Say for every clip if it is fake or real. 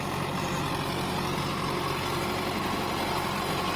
real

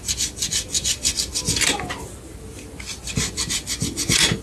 real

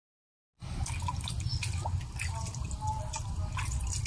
real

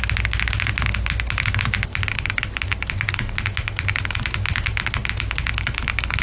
real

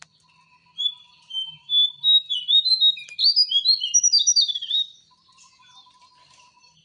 real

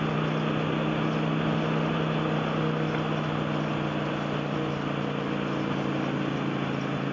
real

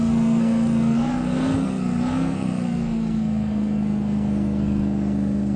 fake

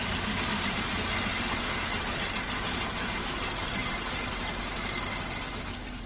real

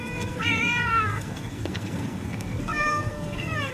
fake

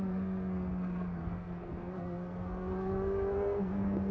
fake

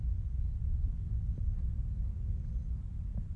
real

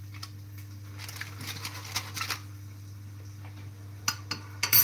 real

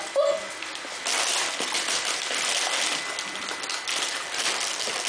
real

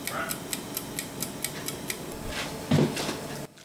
real